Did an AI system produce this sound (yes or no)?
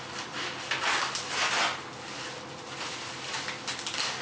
no